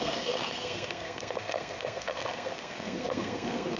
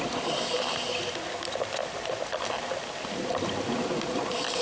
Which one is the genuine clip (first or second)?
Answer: second